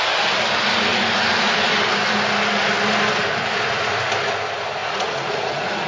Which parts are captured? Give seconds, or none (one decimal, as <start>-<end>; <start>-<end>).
0.0-4.8